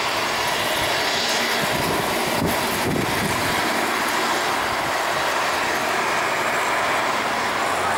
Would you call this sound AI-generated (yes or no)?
no